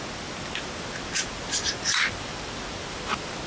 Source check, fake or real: real